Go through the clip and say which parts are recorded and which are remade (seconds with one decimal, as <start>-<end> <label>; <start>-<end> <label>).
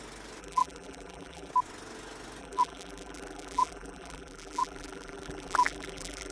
0.0-0.4 recorded; 0.4-1.5 remade; 1.5-2.4 recorded; 2.4-6.3 remade